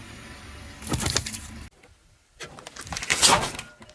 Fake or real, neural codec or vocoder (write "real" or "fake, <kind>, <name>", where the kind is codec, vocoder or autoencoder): real